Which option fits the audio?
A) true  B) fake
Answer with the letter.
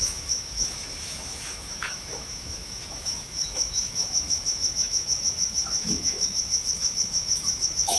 B